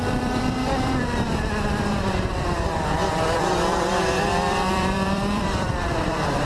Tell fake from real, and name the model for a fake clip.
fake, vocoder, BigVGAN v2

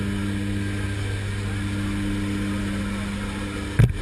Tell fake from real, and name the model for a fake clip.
real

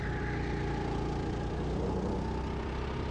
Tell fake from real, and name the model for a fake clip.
real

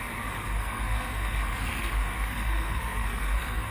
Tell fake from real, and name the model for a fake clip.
fake, codec, SNAC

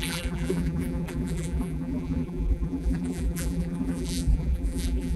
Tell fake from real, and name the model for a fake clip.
fake, vocoder, BigVGAN v2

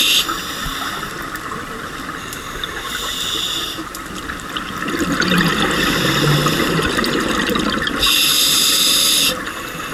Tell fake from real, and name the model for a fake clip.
real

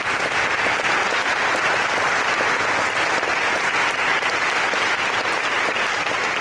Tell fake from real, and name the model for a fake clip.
real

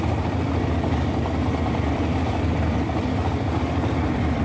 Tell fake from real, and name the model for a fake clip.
fake, vocoder, BigVGAN v2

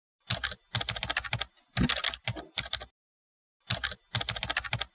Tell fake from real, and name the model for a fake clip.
real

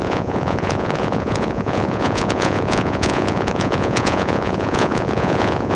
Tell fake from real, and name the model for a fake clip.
fake, vocoder, Vocos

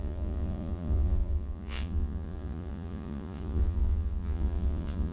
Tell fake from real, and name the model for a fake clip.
fake, vocoder, Vocos